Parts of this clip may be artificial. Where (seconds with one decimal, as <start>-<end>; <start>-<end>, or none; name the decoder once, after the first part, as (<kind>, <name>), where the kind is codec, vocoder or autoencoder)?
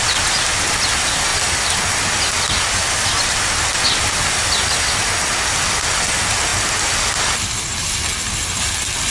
none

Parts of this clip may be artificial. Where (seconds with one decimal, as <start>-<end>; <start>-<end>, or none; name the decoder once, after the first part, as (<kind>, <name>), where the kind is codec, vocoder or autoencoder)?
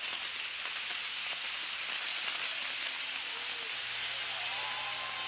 none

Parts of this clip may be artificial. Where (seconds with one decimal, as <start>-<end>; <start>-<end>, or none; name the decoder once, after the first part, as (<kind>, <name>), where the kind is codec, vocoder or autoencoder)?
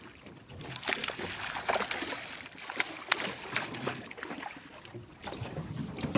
none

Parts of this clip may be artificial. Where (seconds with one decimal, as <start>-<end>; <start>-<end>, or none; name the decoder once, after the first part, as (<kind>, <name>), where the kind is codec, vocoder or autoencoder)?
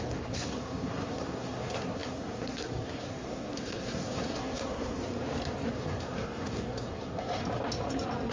0.0-5.0 (codec, SNAC); 5.7-7.4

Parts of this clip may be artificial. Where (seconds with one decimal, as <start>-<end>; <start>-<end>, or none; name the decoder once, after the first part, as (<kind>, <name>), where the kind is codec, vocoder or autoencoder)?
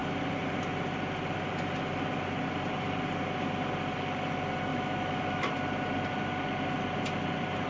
4.7-5.5 (autoencoder, DAC-VAE)